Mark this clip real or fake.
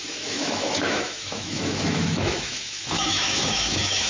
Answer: fake